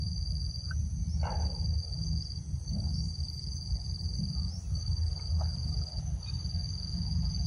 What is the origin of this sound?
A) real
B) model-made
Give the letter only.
A